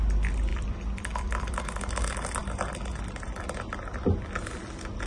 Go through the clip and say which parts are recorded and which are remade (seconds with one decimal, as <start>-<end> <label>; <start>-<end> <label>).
0.0-0.5 recorded; 0.5-1.8 remade; 1.8-5.1 recorded